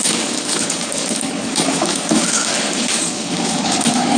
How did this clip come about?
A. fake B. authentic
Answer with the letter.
A